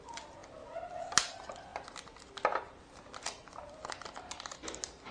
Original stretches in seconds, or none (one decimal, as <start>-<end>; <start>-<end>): 0.0-5.1